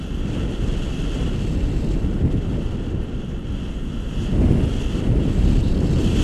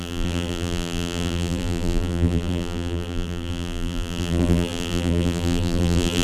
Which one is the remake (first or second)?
second